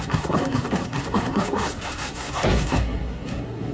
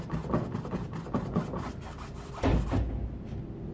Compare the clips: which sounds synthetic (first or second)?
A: first